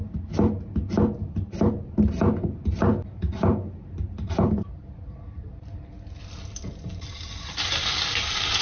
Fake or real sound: real